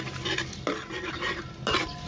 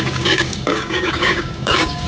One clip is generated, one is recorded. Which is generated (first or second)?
second